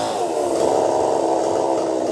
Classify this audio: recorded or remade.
recorded